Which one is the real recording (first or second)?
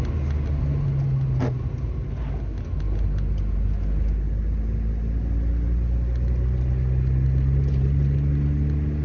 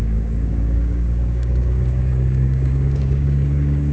first